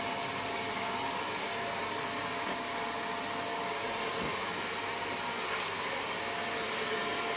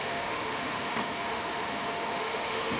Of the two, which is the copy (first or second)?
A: second